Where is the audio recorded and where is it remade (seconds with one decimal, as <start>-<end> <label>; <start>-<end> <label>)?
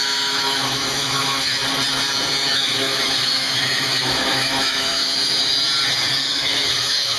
0.0-1.6 remade; 1.6-2.5 recorded; 2.5-5.4 remade; 5.4-6.3 recorded; 6.3-7.2 remade